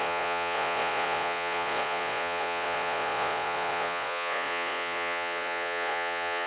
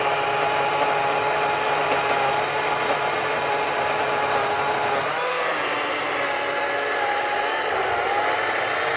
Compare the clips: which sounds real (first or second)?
second